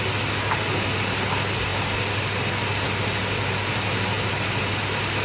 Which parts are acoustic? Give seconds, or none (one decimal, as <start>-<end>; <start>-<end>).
0.0-5.2